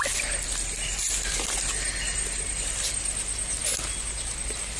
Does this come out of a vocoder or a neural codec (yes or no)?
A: no